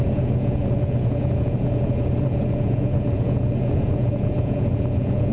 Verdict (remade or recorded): remade